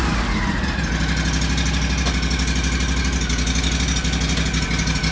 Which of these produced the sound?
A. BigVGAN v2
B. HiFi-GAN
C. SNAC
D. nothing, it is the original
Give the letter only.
D